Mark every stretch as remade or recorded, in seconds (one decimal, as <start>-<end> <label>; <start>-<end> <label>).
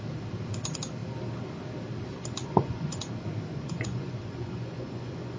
0.0-2.4 recorded; 2.4-3.0 remade; 3.0-3.5 recorded; 3.5-5.4 remade